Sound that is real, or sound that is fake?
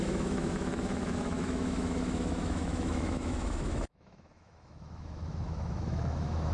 fake